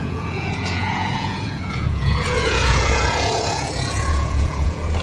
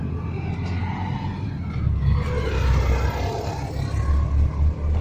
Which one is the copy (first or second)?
first